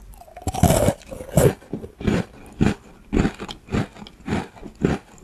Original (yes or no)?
yes